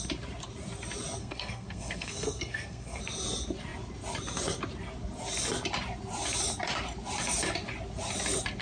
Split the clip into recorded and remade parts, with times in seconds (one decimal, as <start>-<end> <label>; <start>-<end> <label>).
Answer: 0.0-1.2 recorded; 1.2-3.0 remade; 3.0-8.6 recorded